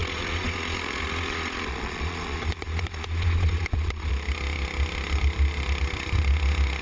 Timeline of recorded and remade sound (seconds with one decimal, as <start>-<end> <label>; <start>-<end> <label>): 0.0-4.1 remade; 4.1-6.8 recorded